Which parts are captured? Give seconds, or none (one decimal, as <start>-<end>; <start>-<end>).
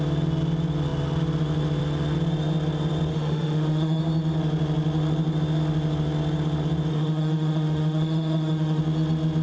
0.0-3.1; 4.0-6.9; 8.8-9.4